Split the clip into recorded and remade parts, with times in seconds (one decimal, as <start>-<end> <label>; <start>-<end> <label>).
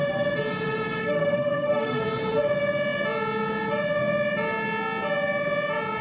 0.0-1.0 recorded; 1.0-2.0 remade; 2.0-6.0 recorded